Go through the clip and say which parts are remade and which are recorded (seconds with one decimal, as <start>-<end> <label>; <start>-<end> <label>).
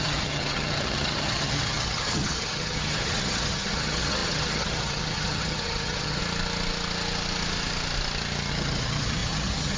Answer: 0.0-6.2 remade; 6.2-8.5 recorded; 8.5-9.8 remade